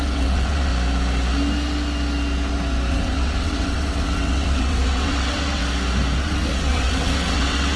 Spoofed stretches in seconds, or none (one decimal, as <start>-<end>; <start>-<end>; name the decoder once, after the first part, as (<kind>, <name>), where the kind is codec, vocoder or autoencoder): 0.0-0.7 (vocoder, WaveNeXt); 2.9-5.6; 6.2-7.8

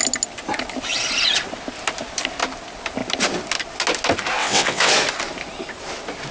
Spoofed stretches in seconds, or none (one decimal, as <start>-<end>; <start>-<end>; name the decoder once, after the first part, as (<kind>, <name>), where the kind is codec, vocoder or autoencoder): 4.4-4.9 (vocoder, WaveNeXt)

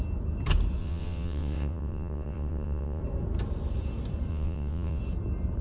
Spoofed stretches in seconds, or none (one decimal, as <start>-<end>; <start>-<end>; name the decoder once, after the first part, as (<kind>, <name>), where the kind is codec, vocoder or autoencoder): 0.8-3.0 (vocoder, WaveNeXt); 4.3-5.0

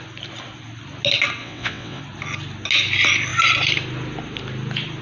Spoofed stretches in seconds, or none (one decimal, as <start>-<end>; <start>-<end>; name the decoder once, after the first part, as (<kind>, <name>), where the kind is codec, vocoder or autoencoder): 1.4-2.0 (vocoder, WaveNeXt)

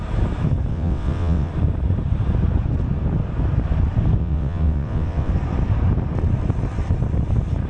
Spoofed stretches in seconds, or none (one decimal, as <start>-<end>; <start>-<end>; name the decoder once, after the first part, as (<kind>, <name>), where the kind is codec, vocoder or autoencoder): 0.7-1.5 (vocoder, WaveNeXt); 4.2-5.3

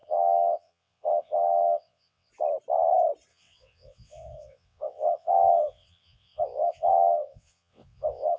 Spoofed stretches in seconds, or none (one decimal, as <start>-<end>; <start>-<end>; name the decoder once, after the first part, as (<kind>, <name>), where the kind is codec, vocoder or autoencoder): 0.0-2.3 (vocoder, WaveNeXt); 3.3-8.4